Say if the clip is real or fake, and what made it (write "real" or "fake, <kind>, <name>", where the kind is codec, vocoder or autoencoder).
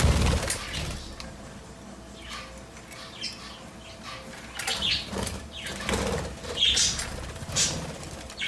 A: real